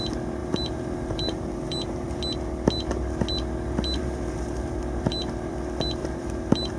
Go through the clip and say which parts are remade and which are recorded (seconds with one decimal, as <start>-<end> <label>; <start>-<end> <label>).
0.0-0.4 recorded; 0.4-2.2 remade; 2.2-4.0 recorded; 4.0-5.5 remade; 5.5-6.0 recorded; 6.0-6.8 remade